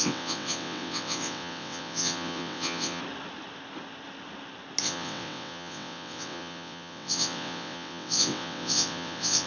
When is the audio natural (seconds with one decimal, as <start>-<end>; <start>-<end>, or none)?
3.0-4.8